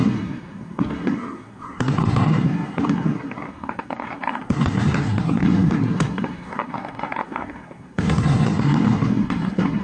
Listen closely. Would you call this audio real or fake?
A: fake